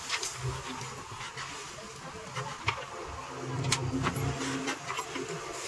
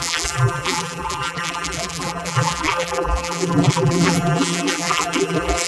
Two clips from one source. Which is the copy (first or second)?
second